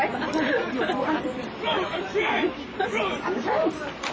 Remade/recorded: remade